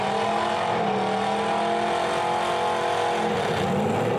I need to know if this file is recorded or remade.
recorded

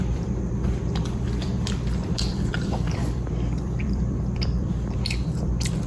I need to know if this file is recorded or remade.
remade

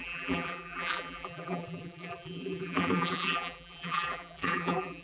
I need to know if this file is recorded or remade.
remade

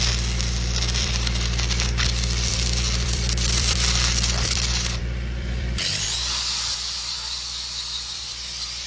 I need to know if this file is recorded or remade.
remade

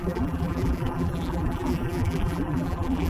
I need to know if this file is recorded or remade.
remade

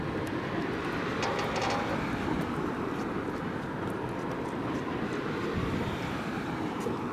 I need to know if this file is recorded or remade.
recorded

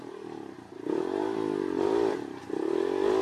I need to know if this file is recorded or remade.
recorded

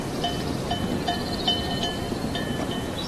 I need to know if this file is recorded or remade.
recorded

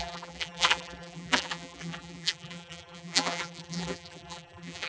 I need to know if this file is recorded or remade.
remade